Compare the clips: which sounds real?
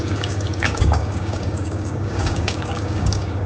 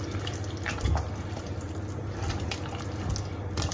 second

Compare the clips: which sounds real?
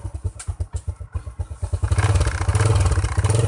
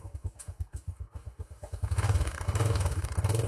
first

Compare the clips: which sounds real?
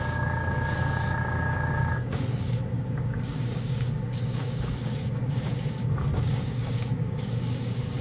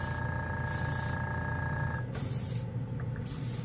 second